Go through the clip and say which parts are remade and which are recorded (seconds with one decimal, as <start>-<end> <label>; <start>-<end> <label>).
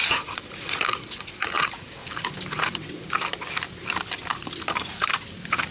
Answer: 0.0-2.0 remade; 2.0-5.7 recorded